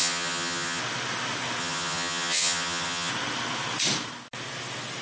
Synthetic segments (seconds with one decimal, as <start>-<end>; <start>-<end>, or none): 0.0-0.8; 1.6-3.1